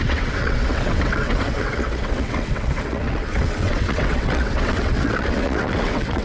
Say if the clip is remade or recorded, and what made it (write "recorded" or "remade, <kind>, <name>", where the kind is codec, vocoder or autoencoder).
remade, vocoder, WaveNeXt